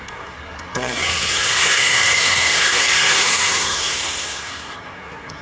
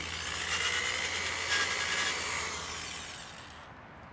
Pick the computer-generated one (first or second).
first